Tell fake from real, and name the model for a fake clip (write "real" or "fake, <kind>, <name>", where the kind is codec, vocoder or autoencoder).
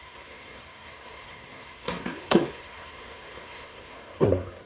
fake, codec, SNAC